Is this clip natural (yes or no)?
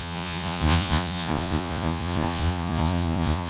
no